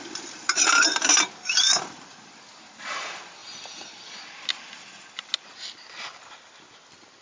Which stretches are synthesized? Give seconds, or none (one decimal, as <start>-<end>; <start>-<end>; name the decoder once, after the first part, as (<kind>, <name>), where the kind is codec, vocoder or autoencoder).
none